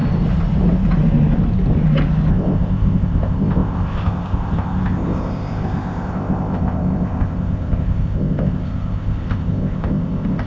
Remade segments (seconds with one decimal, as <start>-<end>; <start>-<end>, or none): 2.3-10.5